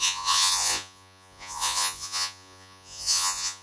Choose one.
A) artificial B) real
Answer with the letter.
A